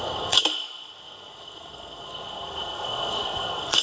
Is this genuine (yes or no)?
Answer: no